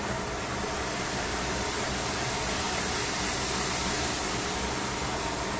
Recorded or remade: recorded